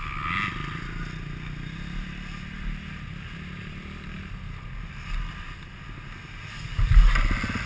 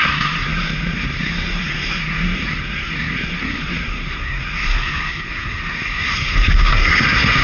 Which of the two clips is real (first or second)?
first